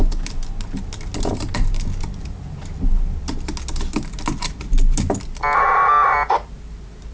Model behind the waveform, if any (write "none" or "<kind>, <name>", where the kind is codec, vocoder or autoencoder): none